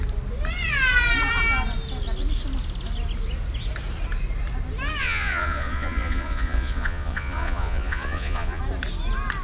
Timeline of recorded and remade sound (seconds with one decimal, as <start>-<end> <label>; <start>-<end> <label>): 0.0-5.0 recorded; 5.0-8.6 remade; 8.6-9.4 recorded